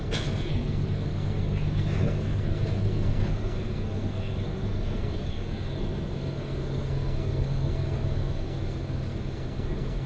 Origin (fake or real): fake